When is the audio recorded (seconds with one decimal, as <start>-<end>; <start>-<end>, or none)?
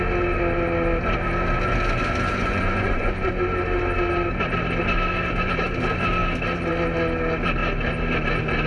0.0-2.4; 3.3-8.7